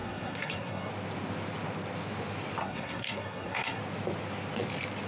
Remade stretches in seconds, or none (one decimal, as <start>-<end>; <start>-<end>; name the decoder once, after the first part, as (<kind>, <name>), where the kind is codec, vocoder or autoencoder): 0.0-0.9 (codec, SNAC); 2.6-3.8